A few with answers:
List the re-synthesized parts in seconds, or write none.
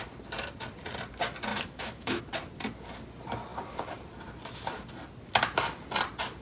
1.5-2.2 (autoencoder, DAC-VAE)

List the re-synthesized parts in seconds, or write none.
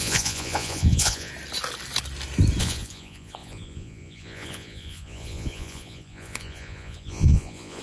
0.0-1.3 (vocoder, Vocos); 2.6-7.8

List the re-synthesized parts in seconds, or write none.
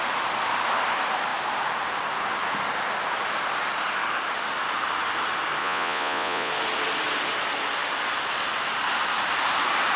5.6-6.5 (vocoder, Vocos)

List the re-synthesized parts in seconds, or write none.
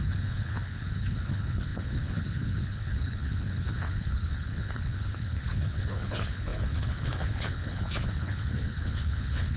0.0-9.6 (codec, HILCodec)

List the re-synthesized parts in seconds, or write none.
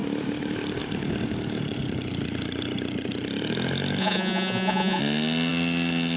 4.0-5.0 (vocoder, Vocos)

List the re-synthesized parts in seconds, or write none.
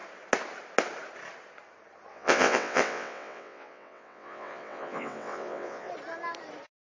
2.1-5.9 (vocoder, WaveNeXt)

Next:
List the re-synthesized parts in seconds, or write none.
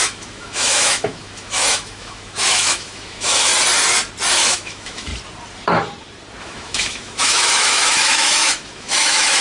0.0-3.5 (autoencoder, DAC-VAE); 4.3-5.1; 6.4-9.4